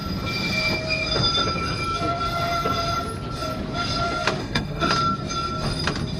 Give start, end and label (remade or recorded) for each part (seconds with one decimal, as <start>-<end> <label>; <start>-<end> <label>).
0.0-4.4 recorded; 4.4-4.9 remade; 4.9-6.2 recorded